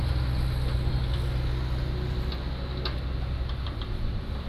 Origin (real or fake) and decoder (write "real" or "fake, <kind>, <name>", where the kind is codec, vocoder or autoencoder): real